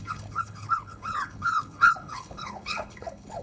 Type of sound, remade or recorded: remade